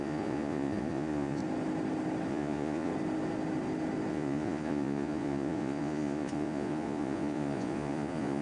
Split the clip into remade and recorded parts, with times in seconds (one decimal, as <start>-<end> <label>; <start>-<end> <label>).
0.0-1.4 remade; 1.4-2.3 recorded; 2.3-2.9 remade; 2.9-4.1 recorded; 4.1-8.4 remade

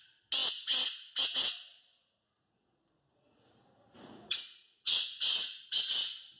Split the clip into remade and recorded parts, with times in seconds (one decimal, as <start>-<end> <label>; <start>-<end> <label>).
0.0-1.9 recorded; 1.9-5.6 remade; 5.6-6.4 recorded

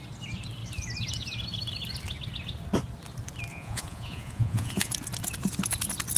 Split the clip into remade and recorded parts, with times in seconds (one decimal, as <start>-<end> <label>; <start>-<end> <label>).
0.0-3.5 recorded; 3.5-4.9 remade; 4.9-6.2 recorded